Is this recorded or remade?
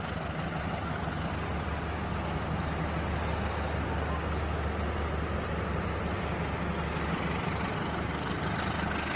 recorded